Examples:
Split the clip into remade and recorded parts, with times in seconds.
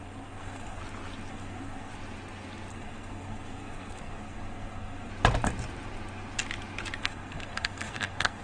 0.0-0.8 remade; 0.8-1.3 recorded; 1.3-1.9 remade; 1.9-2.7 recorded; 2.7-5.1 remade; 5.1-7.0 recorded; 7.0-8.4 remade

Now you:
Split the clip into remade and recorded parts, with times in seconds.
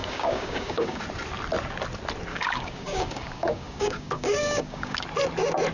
0.0-1.0 remade; 1.0-2.3 recorded; 2.3-5.0 remade; 5.0-5.7 recorded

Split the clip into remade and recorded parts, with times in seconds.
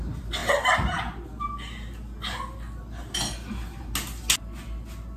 0.0-5.2 recorded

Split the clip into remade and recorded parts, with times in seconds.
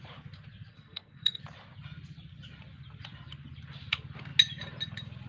0.0-0.7 recorded; 0.7-1.4 remade; 1.4-5.3 recorded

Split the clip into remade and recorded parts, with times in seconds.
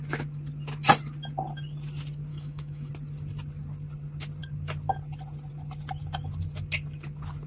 0.0-2.3 recorded; 2.3-2.9 remade; 2.9-7.5 recorded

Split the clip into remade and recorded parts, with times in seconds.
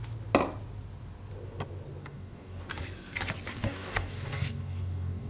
0.0-2.0 recorded; 2.0-2.6 remade; 2.6-3.5 recorded; 3.5-5.3 remade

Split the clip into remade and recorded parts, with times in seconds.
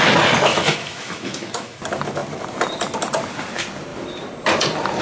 0.0-0.5 recorded; 0.5-1.8 remade; 1.8-5.0 recorded